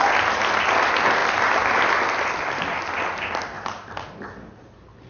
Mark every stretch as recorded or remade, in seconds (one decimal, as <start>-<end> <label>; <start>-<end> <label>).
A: 0.0-5.1 recorded